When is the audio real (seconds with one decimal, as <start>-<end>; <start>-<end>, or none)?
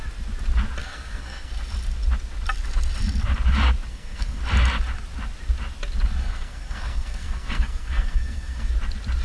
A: 0.0-0.8; 1.5-3.9; 4.4-6.2; 8.7-9.2